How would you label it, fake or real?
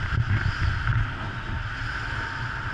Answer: real